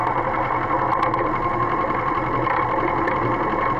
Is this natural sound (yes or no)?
yes